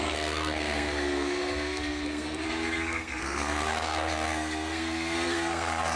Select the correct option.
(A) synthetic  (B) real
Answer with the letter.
A